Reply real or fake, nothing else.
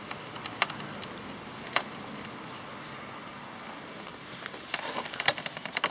real